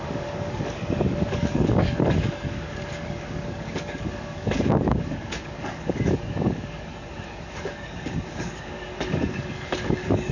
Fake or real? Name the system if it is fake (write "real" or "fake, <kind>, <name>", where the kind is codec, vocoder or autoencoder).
fake, codec, DAC